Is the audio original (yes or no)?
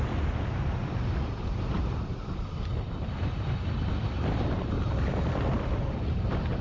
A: no